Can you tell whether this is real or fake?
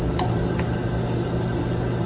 real